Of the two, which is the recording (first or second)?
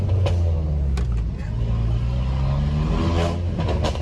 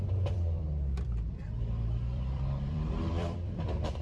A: first